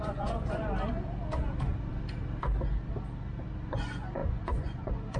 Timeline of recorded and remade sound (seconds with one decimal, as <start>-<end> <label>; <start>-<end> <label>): 0.0-0.6 remade; 0.6-3.7 recorded; 3.7-5.2 remade